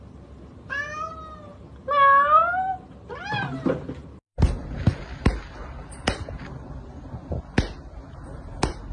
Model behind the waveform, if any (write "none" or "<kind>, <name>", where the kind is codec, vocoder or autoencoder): none